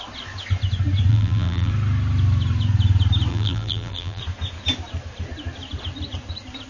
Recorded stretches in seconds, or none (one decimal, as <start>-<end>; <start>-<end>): 0.0-1.1; 1.7-3.3; 4.2-6.7